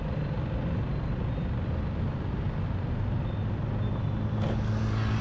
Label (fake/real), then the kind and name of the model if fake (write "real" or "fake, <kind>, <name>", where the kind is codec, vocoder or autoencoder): real